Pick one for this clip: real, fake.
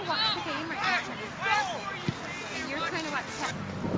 real